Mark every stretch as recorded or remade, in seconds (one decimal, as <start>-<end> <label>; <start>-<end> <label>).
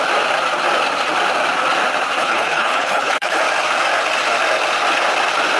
0.0-2.2 recorded; 2.2-3.4 remade; 3.4-5.6 recorded